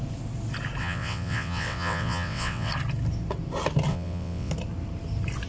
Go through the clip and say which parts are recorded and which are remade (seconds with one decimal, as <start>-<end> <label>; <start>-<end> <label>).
0.0-0.8 recorded; 0.8-2.7 remade; 2.7-3.9 recorded; 3.9-4.5 remade; 4.5-5.5 recorded